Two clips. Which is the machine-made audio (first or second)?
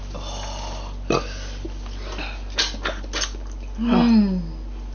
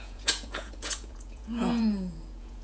second